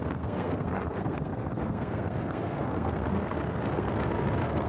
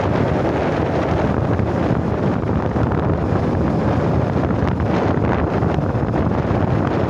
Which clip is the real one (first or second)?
second